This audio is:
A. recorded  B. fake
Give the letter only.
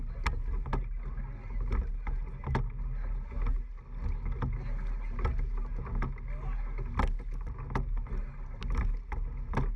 A